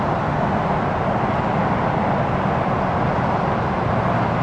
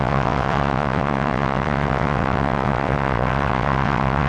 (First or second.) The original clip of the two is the first